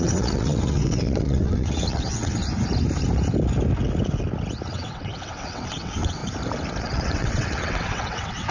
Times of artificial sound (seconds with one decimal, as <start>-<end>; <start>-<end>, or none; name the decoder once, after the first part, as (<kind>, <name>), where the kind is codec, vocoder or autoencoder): 0.0-2.4 (vocoder, WaveNeXt); 4.7-6.2; 6.8-8.5